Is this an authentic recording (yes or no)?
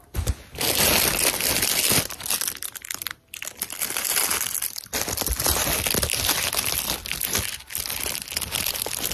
yes